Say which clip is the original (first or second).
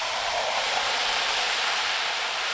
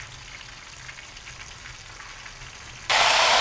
second